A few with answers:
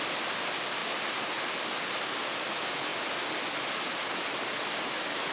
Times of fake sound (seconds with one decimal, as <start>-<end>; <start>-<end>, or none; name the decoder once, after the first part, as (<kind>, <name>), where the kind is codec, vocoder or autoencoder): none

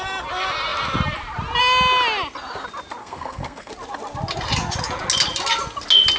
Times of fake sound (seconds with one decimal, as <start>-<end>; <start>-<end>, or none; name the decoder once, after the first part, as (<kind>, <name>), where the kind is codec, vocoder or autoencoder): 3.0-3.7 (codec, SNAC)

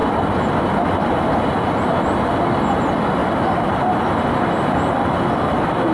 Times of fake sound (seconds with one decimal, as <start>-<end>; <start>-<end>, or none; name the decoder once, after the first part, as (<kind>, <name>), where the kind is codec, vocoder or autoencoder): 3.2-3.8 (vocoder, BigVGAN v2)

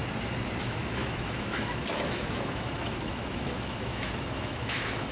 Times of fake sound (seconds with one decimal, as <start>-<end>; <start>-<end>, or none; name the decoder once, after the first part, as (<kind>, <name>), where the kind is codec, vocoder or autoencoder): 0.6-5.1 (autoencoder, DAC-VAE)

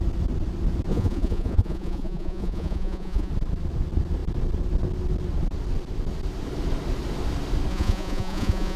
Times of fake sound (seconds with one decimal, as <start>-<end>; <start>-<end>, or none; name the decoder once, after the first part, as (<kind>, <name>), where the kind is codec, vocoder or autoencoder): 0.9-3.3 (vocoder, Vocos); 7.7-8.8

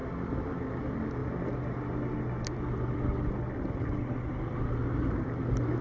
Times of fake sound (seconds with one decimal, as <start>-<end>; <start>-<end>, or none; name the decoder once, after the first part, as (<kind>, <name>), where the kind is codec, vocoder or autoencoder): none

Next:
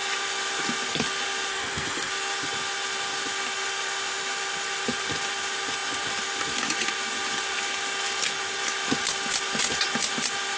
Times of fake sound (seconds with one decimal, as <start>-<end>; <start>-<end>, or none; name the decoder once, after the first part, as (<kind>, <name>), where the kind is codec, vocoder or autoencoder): 1.5-2.1 (codec, SNAC)

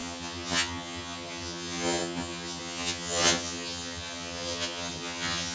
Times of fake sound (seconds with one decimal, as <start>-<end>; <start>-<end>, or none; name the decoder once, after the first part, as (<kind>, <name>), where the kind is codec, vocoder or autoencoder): 0.0-5.5 (vocoder, HiFi-GAN)